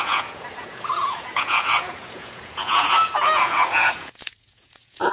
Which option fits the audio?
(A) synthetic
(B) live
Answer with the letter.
A